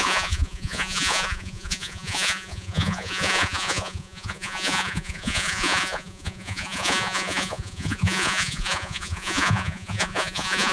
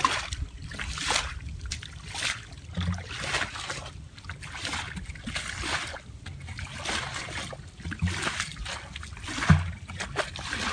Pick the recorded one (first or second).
second